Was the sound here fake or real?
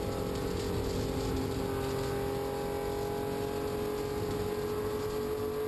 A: real